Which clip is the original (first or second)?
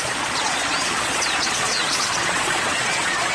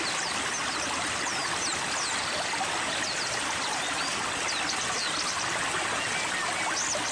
second